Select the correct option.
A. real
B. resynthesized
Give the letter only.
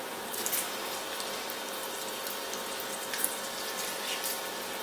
B